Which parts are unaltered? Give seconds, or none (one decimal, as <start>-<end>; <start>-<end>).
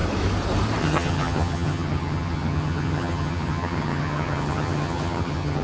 0.0-0.8